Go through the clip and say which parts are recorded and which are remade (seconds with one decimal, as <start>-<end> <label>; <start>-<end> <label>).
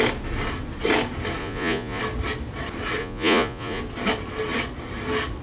0.0-1.4 recorded; 1.4-2.0 remade; 2.0-3.0 recorded; 3.0-3.8 remade; 3.8-5.4 recorded